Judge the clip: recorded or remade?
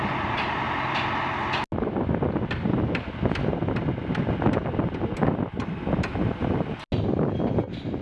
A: recorded